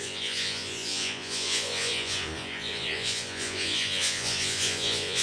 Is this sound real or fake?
fake